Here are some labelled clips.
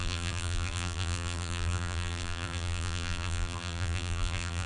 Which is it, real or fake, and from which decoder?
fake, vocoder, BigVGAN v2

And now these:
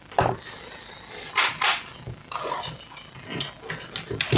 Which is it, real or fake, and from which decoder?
real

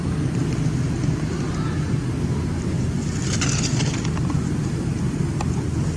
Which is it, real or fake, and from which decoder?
real